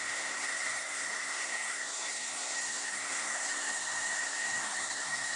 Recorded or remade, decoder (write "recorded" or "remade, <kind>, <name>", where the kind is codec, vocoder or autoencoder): remade, codec, SNAC